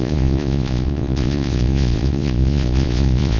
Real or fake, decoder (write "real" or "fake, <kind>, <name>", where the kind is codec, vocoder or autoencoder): fake, vocoder, Vocos